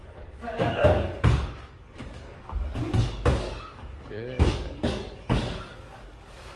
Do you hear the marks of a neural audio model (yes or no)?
yes